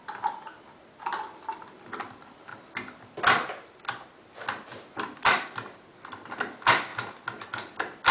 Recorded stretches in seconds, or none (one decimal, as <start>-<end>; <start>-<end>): 0.0-8.1